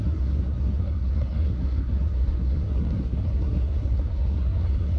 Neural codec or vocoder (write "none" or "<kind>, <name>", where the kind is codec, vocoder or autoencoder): codec, SNAC